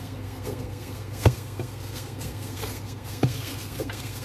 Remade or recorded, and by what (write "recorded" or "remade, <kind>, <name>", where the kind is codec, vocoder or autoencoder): remade, codec, SNAC